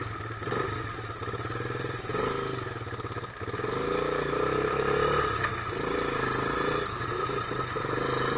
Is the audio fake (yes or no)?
no